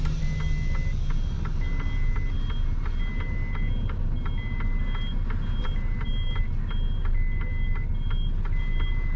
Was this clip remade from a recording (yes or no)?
no